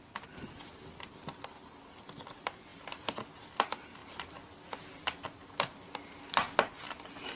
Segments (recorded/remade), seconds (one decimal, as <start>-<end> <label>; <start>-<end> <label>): 0.0-7.4 recorded